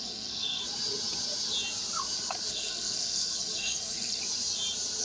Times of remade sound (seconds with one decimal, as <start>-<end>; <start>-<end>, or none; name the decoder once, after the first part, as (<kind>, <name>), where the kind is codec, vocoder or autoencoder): 0.0-0.6 (codec, SNAC); 2.5-4.2

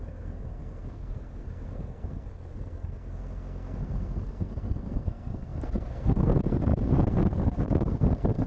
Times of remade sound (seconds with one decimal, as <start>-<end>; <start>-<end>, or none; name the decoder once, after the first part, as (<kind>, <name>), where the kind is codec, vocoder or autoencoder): 0.0-8.5 (codec, SNAC)

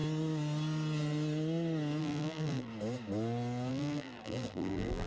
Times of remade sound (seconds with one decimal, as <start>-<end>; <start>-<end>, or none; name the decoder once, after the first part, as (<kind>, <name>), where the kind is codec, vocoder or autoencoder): 2.0-2.7 (vocoder, BigVGAN v2); 3.7-5.1

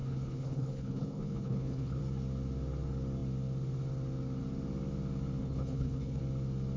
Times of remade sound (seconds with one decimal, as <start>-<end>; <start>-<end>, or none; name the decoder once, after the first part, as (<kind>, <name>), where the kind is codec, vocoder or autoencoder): 0.0-2.0 (codec, HILCodec); 5.4-6.2